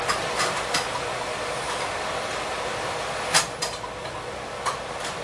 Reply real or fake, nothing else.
real